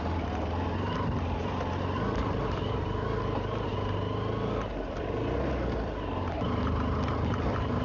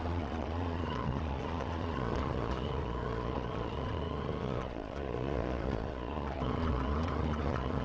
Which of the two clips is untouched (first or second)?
first